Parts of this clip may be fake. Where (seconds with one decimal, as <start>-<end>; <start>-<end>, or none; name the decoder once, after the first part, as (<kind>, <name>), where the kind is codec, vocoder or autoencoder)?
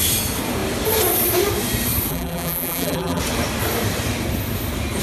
2.1-3.2 (vocoder, BigVGAN v2)